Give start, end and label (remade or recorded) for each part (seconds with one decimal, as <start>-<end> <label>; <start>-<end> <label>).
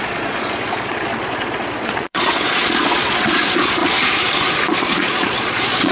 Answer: 0.0-3.8 remade; 3.8-4.8 recorded; 4.8-5.9 remade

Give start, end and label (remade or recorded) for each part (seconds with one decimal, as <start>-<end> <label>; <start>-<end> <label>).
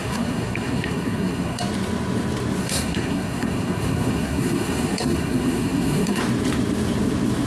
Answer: 0.0-1.6 remade; 1.6-2.6 recorded; 2.6-6.2 remade; 6.2-7.5 recorded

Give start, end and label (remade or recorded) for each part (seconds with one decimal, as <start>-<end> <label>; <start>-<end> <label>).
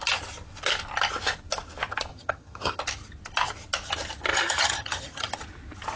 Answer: 0.0-2.1 recorded; 2.1-2.8 remade; 2.8-4.3 recorded; 4.3-5.4 remade; 5.4-6.0 recorded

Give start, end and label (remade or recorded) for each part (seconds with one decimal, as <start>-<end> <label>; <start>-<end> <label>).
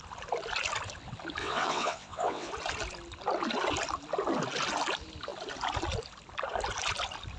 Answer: 0.0-1.4 recorded; 1.4-2.5 remade; 2.5-7.4 recorded